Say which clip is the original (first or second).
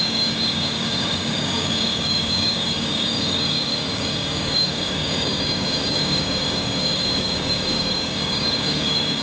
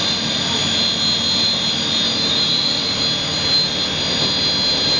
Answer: second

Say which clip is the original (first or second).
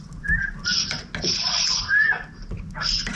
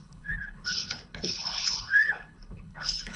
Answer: first